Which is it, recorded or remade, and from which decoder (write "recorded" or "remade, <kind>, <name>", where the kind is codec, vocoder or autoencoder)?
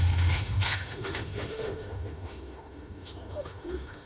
remade, autoencoder, DAC-VAE